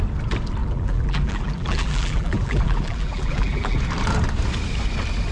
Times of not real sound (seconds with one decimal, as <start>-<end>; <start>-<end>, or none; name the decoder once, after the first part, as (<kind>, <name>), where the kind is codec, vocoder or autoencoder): 0.6-3.8 (vocoder, BigVGAN v2)